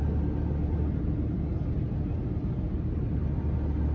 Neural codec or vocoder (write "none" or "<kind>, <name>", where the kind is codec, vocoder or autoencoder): none